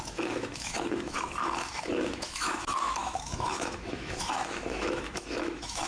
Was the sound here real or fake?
fake